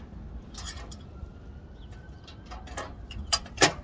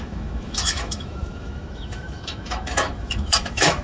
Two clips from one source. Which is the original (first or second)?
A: first